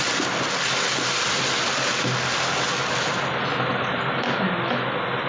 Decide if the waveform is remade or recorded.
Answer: recorded